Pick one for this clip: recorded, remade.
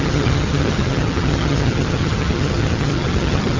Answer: remade